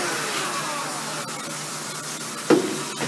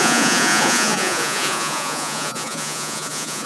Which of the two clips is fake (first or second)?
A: second